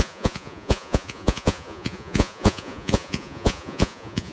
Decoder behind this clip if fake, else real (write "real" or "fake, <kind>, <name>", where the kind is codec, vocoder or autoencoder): fake, vocoder, Vocos